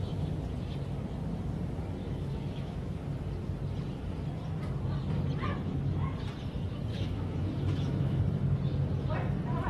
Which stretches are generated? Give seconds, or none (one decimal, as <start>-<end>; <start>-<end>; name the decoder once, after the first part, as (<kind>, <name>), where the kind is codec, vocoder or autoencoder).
2.0-3.0 (autoencoder, DAC-VAE); 6.9-8.2